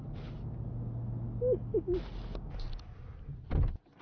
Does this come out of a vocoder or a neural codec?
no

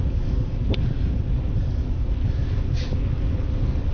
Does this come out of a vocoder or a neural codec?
no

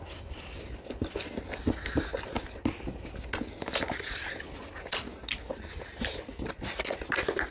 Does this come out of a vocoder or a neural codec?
no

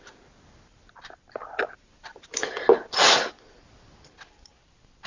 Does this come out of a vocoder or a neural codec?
no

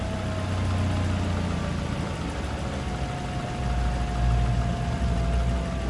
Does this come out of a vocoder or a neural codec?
no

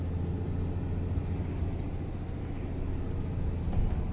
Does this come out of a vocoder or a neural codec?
no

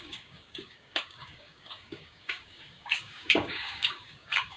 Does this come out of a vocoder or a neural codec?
yes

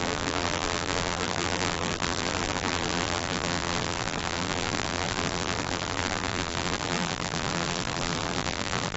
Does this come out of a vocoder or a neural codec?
yes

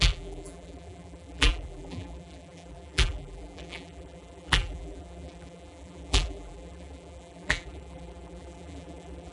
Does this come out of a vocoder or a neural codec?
yes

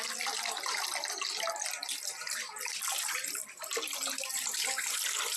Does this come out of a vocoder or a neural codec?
no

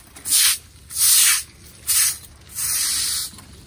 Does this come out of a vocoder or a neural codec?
no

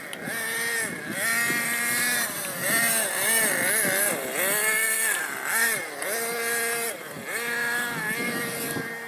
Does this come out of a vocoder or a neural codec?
no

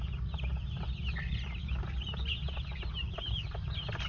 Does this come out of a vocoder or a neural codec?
no